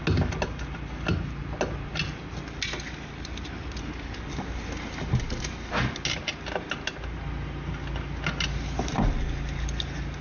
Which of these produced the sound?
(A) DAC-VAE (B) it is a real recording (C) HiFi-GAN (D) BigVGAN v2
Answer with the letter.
B